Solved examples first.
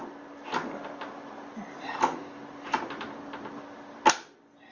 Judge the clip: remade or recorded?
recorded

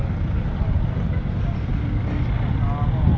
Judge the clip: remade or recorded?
recorded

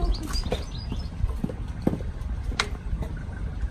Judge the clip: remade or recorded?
recorded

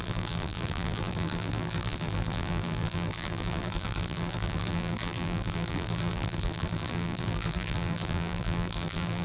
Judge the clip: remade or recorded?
remade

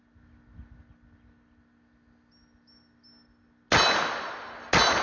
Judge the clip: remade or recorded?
recorded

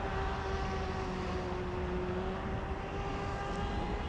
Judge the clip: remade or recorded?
recorded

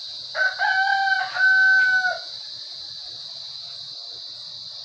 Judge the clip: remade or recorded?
recorded